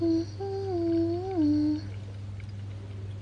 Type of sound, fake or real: real